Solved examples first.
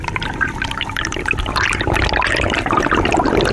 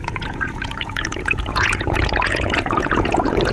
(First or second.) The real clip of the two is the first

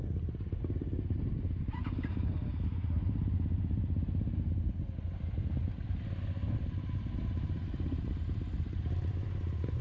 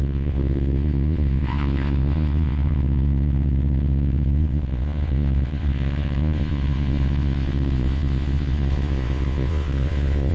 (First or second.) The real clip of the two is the first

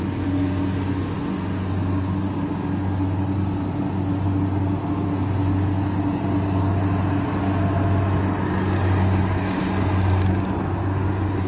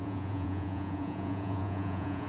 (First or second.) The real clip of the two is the first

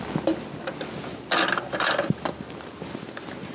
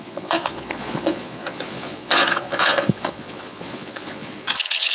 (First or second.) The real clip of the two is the first